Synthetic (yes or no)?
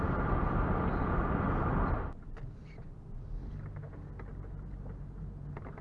no